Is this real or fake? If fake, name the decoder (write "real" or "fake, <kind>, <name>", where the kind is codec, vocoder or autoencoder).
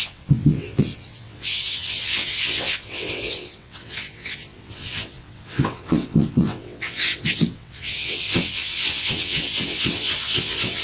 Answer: fake, vocoder, WaveNeXt